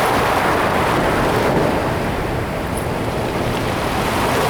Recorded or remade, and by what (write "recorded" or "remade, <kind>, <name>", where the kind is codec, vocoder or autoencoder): recorded